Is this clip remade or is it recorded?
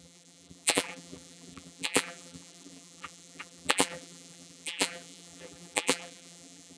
remade